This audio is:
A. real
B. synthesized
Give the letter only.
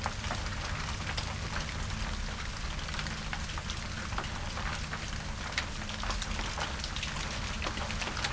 A